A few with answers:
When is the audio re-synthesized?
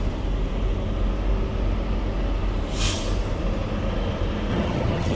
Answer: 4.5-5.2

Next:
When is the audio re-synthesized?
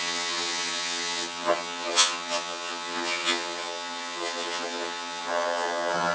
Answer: 0.0-6.1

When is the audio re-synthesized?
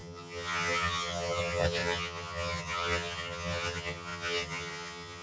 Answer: 0.0-5.2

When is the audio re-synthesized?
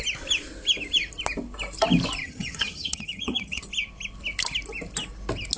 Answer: 2.2-3.6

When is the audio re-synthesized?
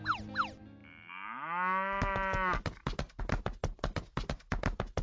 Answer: none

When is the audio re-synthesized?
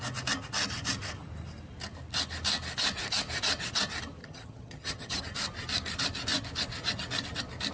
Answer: 4.2-5.2